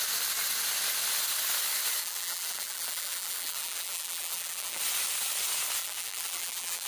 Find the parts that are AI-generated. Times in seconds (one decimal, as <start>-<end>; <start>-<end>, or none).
2.0-4.8; 5.8-6.9